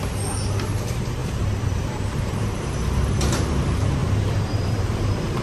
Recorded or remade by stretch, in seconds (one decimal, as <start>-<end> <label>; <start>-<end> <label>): 0.0-1.2 recorded; 1.2-2.9 remade; 2.9-4.0 recorded; 4.0-5.4 remade